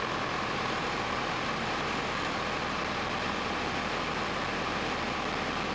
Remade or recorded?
recorded